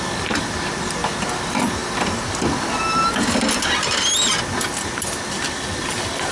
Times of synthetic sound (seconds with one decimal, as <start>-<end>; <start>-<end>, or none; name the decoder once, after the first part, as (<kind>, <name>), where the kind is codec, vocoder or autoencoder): none